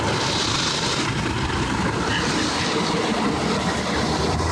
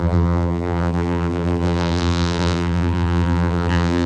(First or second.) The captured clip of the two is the first